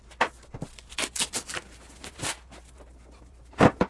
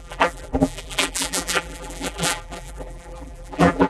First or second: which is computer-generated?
second